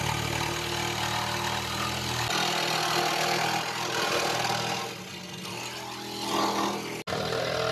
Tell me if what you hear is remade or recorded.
recorded